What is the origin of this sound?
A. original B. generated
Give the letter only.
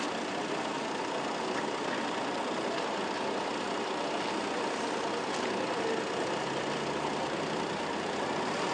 A